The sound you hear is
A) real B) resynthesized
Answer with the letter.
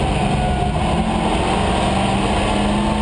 A